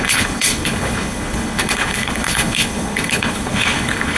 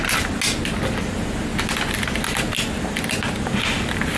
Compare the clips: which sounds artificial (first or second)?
first